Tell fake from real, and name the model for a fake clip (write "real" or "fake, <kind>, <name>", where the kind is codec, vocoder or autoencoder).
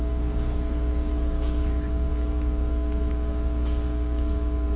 fake, codec, DAC